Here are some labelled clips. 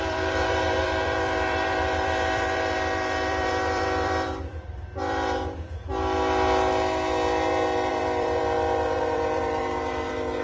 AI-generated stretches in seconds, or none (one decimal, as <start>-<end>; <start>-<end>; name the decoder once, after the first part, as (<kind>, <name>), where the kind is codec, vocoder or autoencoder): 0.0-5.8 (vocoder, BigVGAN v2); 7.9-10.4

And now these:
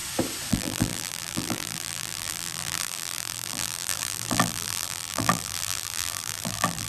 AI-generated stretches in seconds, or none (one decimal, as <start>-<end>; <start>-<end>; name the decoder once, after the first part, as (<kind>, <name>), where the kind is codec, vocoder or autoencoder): 0.5-6.9 (vocoder, BigVGAN v2)

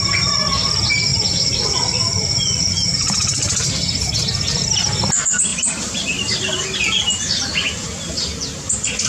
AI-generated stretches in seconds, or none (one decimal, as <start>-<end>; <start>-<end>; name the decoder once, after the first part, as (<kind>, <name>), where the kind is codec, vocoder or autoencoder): 1.1-3.7 (vocoder, BigVGAN v2); 5.5-6.6